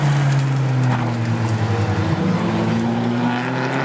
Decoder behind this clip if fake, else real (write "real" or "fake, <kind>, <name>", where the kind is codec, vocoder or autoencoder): real